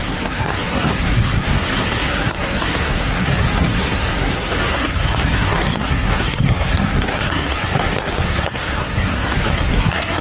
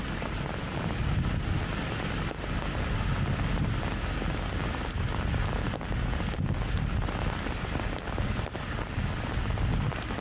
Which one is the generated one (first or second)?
first